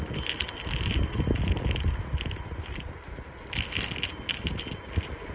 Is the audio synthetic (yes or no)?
no